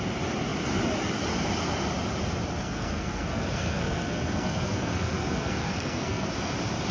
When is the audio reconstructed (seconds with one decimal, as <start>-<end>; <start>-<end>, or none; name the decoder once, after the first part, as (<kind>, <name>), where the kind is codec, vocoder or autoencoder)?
2.6-6.3 (codec, SNAC)